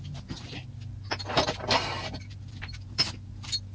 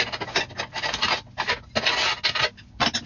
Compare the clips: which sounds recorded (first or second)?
second